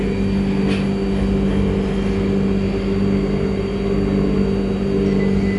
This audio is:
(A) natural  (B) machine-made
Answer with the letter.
A